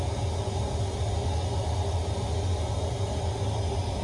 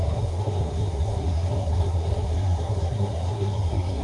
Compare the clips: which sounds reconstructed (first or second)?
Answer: second